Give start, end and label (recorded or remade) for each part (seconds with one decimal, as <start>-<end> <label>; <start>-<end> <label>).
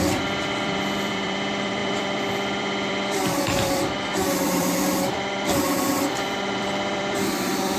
0.0-7.8 remade